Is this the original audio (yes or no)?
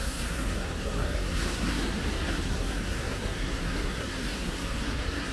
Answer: no